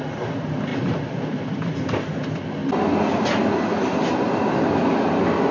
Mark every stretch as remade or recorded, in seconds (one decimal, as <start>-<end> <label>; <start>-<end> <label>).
0.0-0.7 recorded; 0.7-1.7 remade; 1.7-5.5 recorded